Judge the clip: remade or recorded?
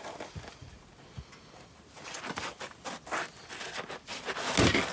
recorded